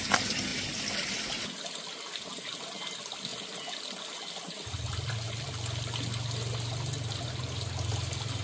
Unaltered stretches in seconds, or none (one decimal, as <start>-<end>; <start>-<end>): 0.0-8.4

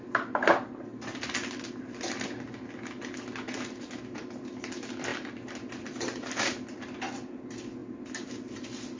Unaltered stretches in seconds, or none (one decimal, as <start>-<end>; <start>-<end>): 0.0-9.0

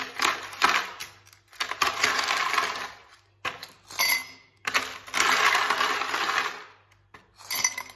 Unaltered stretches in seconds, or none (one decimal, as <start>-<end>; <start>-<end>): 0.0-8.0